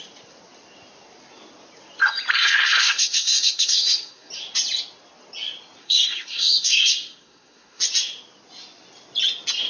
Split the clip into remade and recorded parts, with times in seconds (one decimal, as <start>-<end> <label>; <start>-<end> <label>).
0.0-2.3 recorded; 2.3-4.3 remade; 4.3-5.8 recorded; 5.8-7.8 remade; 7.8-9.7 recorded